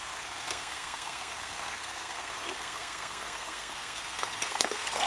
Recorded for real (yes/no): no